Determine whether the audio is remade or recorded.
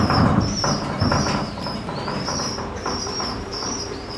remade